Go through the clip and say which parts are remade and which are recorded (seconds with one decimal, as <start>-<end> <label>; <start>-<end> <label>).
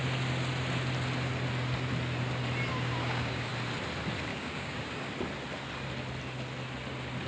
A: 0.0-2.7 recorded; 2.7-3.5 remade; 3.5-4.3 recorded; 4.3-5.1 remade; 5.1-7.3 recorded